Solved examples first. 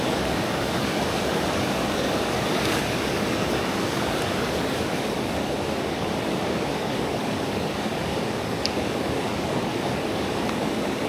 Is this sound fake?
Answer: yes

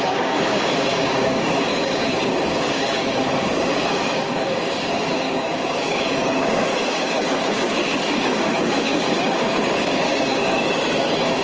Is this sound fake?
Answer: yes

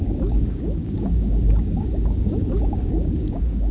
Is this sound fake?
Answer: yes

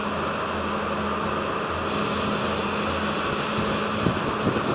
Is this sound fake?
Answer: no